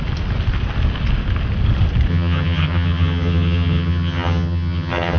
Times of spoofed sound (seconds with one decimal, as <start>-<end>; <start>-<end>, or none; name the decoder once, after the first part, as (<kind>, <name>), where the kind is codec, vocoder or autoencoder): 2.1-5.2 (vocoder, HiFi-GAN)